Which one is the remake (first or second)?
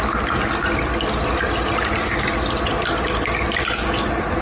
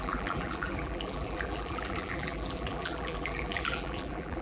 second